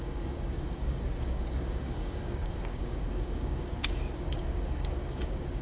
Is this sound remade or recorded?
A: remade